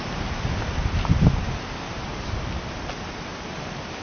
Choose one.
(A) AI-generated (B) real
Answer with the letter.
B